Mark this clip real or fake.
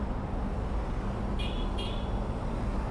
real